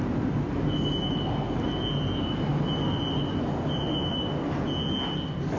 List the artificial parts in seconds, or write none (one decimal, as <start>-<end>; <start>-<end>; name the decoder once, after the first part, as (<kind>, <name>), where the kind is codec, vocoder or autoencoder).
none